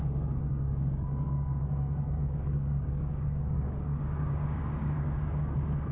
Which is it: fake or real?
fake